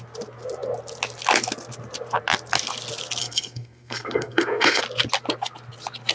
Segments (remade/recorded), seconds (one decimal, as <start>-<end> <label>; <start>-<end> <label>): 0.0-3.2 recorded; 3.2-4.8 remade; 4.8-6.1 recorded